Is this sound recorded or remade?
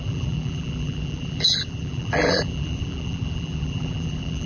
remade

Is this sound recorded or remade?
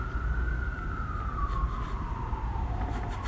recorded